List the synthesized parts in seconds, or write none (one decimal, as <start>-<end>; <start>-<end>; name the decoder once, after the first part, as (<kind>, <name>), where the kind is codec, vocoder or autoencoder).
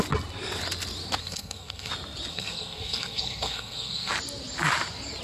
1.2-1.9 (codec, SNAC); 2.3-4.1